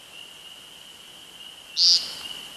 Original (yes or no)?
yes